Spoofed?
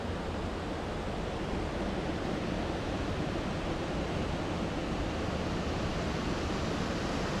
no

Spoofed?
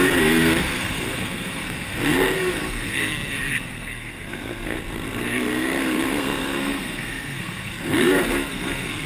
yes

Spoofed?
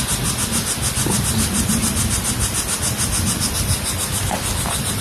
no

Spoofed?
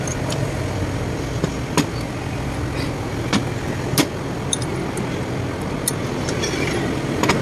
no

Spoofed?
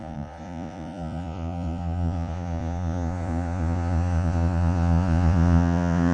yes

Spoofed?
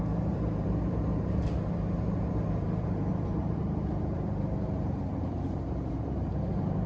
yes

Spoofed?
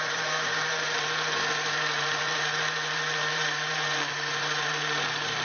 yes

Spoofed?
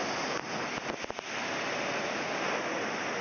no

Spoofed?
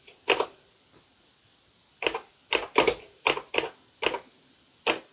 no